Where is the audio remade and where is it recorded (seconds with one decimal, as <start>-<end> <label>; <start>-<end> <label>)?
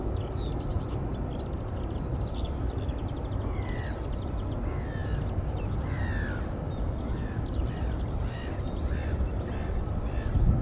0.0-5.0 recorded; 5.0-10.0 remade; 10.0-10.6 recorded